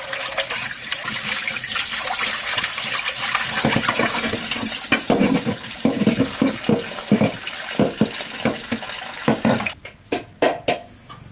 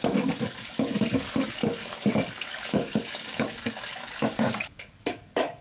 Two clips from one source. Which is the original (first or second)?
first